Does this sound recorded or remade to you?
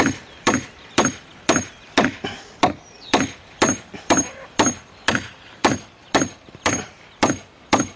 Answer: remade